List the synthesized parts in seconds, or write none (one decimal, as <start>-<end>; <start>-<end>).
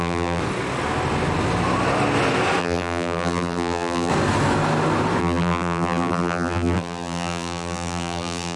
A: 0.0-0.4; 2.6-4.1; 5.2-8.6